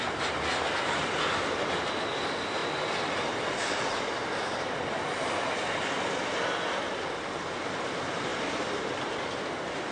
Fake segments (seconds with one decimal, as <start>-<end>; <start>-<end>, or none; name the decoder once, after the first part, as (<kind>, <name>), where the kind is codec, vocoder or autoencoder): none